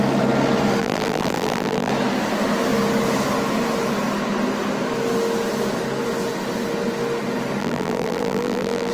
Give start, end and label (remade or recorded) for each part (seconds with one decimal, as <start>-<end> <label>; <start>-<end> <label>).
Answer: 0.0-0.8 recorded; 0.8-1.9 remade; 1.9-7.6 recorded; 7.6-8.9 remade

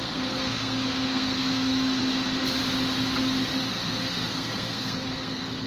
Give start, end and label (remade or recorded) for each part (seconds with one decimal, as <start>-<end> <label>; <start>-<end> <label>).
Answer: 0.0-2.0 remade; 2.0-3.7 recorded; 3.7-5.7 remade